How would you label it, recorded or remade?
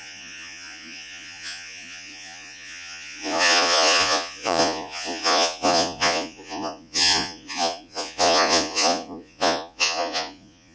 remade